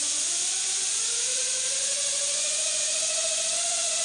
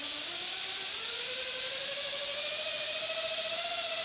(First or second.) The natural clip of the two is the second